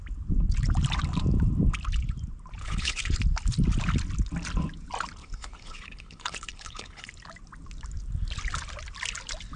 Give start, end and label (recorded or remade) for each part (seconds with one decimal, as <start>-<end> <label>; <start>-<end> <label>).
0.0-2.6 recorded; 2.6-3.2 remade; 3.2-5.2 recorded; 5.2-7.1 remade; 7.1-9.6 recorded